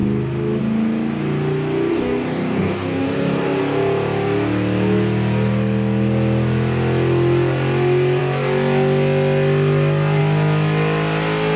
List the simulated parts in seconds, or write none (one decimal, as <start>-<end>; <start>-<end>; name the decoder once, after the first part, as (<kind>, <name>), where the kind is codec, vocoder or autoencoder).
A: 1.9-3.6 (codec, DAC)